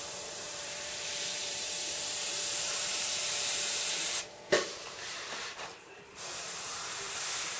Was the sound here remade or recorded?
remade